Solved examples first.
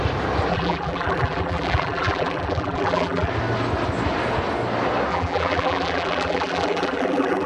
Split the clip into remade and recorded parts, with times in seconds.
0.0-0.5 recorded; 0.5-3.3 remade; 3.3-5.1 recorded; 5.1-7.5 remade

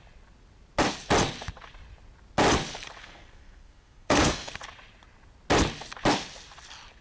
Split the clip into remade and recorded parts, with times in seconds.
0.0-3.0 recorded; 3.0-4.5 remade; 4.5-7.0 recorded

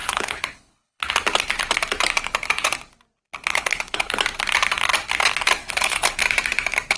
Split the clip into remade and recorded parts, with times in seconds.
0.0-1.1 remade; 1.1-3.5 recorded; 3.5-4.2 remade; 4.2-5.6 recorded; 5.6-6.2 remade; 6.2-7.0 recorded

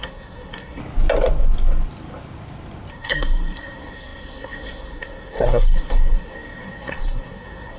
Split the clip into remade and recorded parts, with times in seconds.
0.0-0.8 remade; 0.8-2.9 recorded; 2.9-7.8 remade